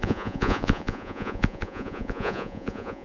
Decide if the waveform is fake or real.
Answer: fake